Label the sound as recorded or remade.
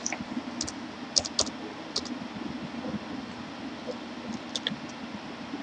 recorded